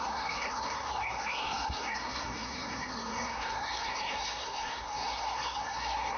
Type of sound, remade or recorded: remade